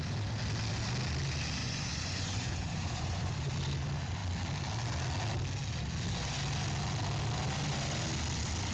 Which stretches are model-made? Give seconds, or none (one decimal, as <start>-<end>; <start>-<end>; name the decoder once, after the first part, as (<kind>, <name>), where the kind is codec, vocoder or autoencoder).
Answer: 1.6-3.3 (vocoder, Vocos)